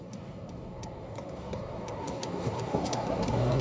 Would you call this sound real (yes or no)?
no